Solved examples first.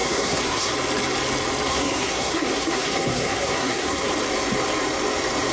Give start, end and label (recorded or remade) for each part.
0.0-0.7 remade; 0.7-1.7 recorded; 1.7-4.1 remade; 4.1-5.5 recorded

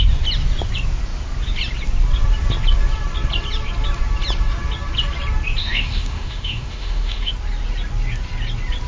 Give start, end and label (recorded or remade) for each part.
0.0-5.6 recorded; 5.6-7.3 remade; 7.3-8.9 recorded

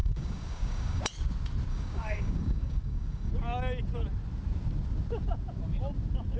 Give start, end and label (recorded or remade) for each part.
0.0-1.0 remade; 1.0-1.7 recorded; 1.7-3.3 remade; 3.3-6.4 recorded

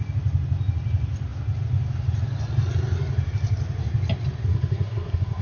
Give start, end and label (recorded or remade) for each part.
0.0-4.5 recorded; 4.5-5.4 remade

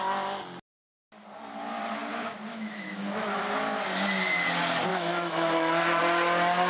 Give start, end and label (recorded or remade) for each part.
0.0-2.5 recorded; 2.5-3.4 remade; 3.4-4.9 recorded; 4.9-6.0 remade; 6.0-6.7 recorded

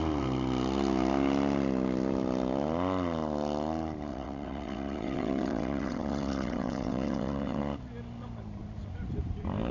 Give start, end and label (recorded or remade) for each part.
0.0-4.1 recorded; 4.1-7.6 remade; 7.6-9.7 recorded